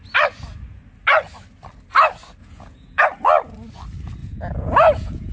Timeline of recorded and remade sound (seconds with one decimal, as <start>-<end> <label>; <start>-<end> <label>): 0.0-2.4 recorded; 2.4-3.0 remade; 3.0-4.2 recorded; 4.2-5.3 remade